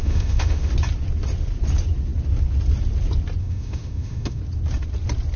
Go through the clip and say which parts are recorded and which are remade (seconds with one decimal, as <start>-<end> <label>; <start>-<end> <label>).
0.0-0.7 remade; 0.7-3.4 recorded; 3.4-4.4 remade; 4.4-5.4 recorded